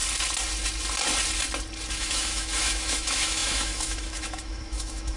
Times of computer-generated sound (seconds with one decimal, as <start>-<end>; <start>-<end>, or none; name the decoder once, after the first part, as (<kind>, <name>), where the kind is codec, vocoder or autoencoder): 1.9-5.2 (autoencoder, DAC-VAE)